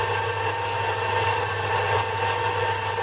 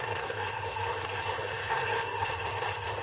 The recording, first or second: first